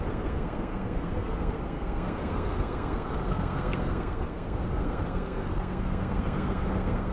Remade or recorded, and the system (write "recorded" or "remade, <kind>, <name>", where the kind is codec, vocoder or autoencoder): remade, codec, SNAC